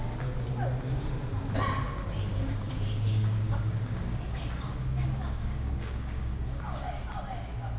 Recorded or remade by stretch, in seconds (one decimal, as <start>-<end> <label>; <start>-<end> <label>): 0.0-2.3 recorded; 2.3-7.0 remade; 7.0-7.8 recorded